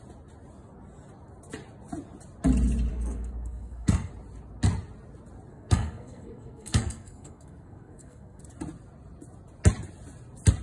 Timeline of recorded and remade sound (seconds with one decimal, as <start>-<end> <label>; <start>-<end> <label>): 0.0-2.9 recorded; 2.9-4.1 remade; 4.1-5.5 recorded; 5.5-8.4 remade; 8.4-10.6 recorded